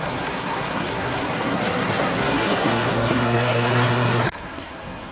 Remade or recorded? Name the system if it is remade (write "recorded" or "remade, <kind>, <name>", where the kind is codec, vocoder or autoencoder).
remade, codec, SNAC